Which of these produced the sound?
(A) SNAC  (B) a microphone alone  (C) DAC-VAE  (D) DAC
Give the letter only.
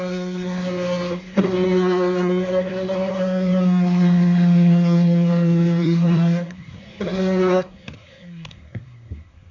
A